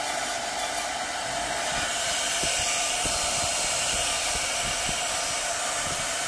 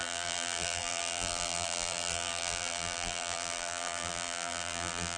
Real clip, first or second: first